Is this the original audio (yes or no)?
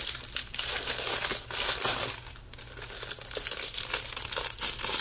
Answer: yes